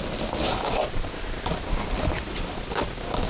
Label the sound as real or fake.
real